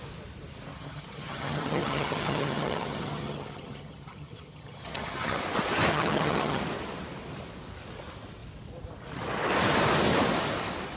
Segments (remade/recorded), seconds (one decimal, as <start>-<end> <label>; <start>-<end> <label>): 0.0-0.7 recorded; 0.7-5.4 remade; 5.4-5.9 recorded; 5.9-6.6 remade; 6.6-11.0 recorded